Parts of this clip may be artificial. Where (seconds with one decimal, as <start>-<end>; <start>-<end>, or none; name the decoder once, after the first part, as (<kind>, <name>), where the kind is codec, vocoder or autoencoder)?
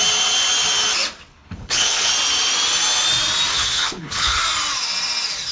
1.3-2.1 (codec, HILCodec); 3.5-4.4